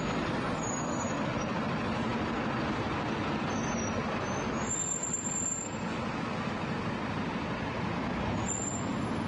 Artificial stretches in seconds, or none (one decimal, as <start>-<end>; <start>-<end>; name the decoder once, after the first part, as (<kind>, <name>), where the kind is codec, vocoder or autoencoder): none